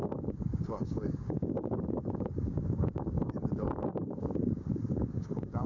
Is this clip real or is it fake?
fake